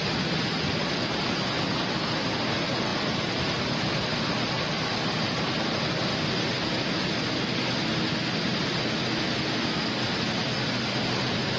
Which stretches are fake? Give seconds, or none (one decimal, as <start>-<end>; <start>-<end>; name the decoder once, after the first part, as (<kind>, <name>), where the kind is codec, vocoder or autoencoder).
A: none